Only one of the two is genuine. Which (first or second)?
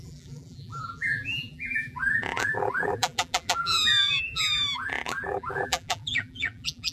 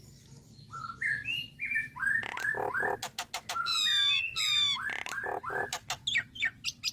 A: second